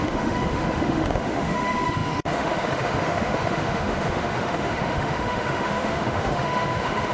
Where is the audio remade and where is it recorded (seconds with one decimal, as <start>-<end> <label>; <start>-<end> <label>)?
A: 0.0-7.1 remade